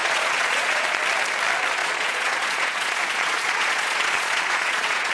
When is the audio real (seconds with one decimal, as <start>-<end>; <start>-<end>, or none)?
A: 1.0-1.8